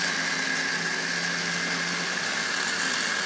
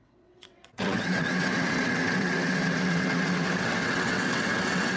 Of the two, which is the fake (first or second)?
second